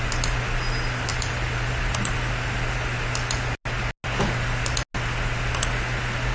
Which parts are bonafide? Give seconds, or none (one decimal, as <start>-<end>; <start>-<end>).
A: 0.0-1.1; 2.1-6.3